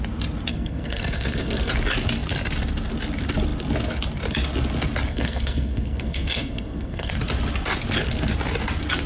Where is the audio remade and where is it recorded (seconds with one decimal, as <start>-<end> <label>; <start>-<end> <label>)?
0.0-0.5 recorded; 0.5-1.7 remade; 1.7-5.1 recorded; 5.1-7.1 remade; 7.1-9.1 recorded